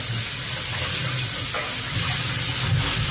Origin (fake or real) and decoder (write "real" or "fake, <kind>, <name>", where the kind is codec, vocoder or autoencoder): real